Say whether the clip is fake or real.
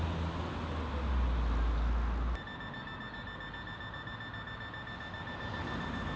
real